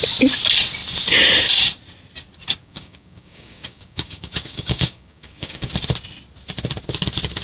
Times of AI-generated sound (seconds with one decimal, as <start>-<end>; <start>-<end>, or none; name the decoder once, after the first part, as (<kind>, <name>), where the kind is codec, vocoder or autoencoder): 2.6-5.7 (codec, DAC)